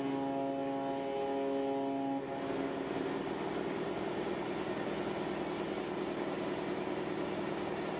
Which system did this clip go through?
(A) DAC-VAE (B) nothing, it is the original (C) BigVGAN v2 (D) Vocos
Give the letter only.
B